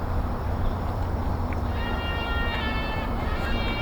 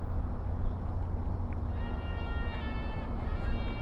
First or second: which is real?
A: second